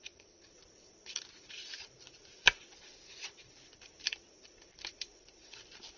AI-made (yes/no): yes